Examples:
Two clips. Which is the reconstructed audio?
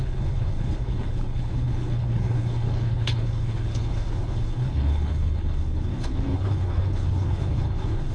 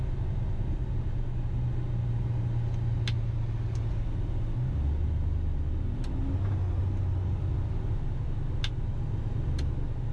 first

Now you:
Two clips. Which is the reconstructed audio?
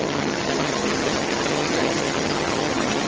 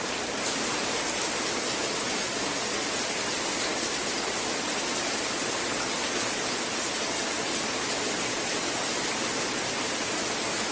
first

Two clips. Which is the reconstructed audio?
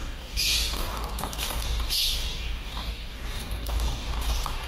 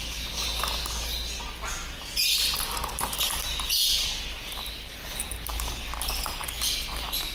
first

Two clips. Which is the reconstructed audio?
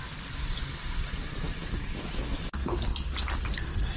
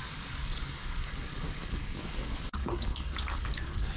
second